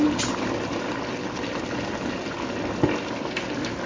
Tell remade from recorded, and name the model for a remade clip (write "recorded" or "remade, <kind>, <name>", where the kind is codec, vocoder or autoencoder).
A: recorded